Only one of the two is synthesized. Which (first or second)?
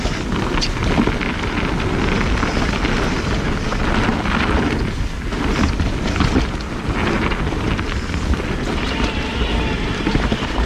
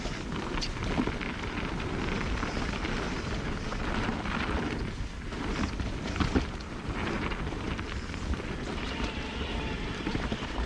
second